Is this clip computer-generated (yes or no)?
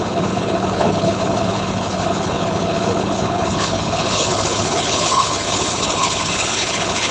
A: yes